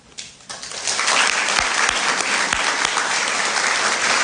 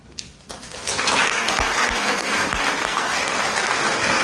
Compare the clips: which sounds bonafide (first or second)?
first